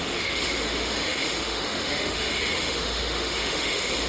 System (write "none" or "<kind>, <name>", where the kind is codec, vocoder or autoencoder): autoencoder, DAC-VAE